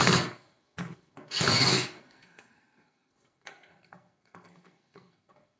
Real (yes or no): no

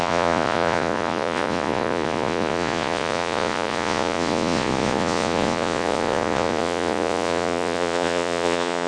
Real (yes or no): no